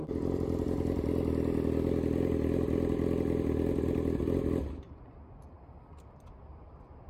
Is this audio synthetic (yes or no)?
no